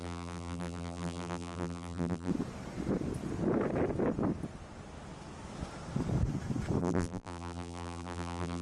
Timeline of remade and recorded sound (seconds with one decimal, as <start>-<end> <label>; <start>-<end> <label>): 0.0-2.3 remade; 2.3-6.8 recorded; 6.8-8.6 remade